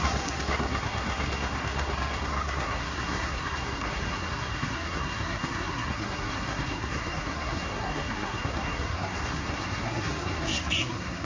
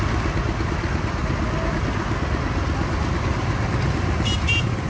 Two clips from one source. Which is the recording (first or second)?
second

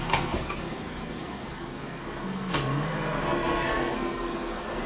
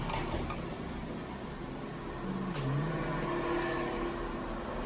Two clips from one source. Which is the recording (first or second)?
second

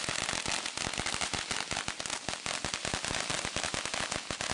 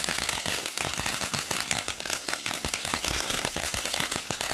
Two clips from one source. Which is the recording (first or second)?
first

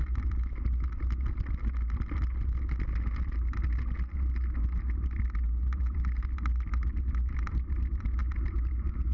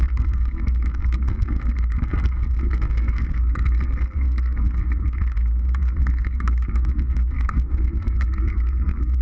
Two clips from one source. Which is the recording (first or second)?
first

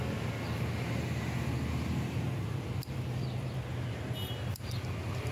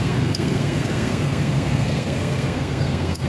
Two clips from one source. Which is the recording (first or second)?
first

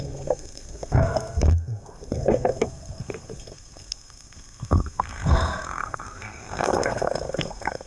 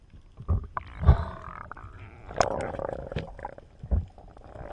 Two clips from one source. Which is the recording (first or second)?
second